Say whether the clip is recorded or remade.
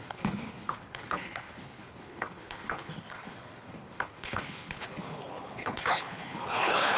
remade